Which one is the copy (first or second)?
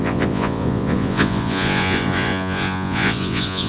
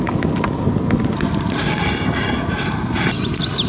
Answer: first